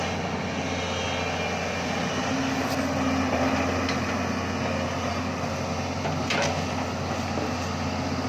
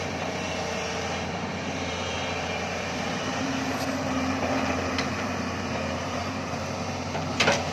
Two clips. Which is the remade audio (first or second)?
second